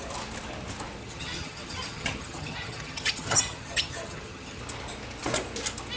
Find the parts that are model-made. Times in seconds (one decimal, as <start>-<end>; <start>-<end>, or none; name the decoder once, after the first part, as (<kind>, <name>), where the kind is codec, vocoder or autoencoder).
1.0-4.6 (vocoder, HiFi-GAN)